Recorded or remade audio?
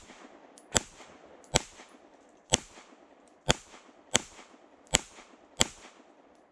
recorded